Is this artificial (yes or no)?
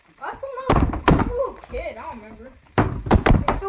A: yes